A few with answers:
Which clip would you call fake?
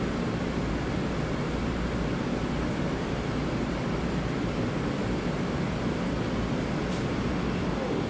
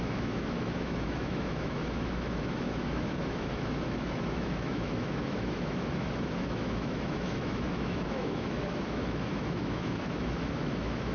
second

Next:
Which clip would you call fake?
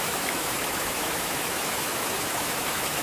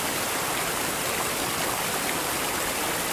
first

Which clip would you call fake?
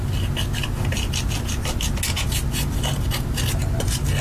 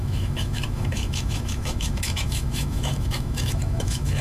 second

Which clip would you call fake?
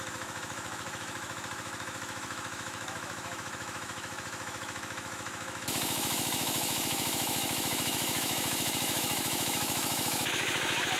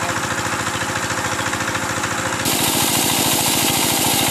first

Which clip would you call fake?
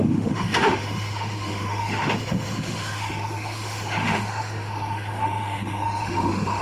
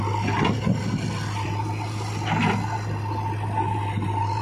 first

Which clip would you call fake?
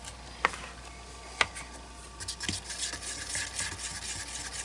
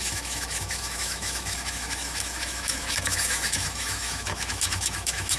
second